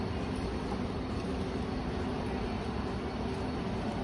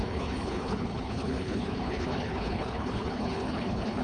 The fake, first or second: second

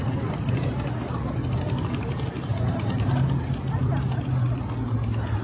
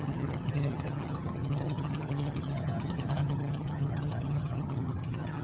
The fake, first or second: second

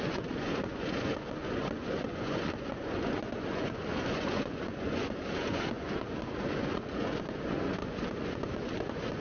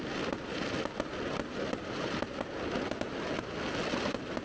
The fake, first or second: first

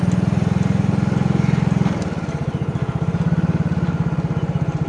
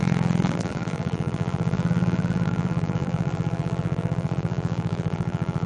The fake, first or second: second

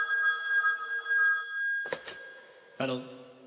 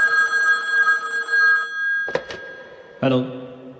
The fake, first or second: first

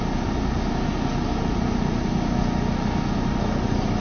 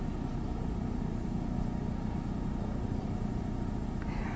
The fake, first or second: second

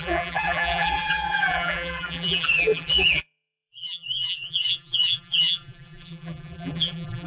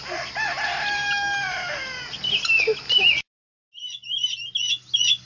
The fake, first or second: first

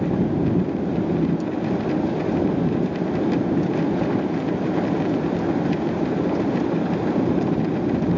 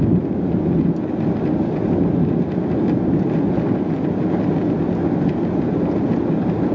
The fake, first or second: first